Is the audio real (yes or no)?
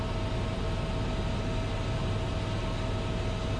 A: yes